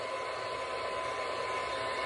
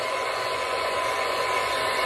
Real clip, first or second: first